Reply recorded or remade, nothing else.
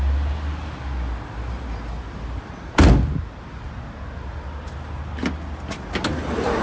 recorded